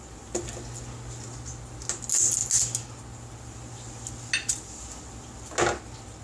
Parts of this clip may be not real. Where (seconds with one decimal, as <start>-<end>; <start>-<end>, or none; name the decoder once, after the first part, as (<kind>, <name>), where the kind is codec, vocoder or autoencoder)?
none